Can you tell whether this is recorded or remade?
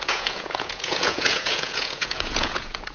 remade